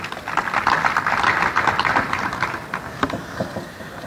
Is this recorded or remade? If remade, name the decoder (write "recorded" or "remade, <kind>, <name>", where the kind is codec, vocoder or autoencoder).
recorded